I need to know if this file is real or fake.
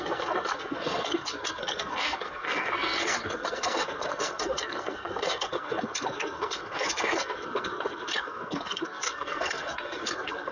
fake